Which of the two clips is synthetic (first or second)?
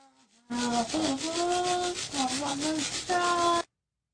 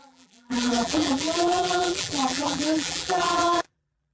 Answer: second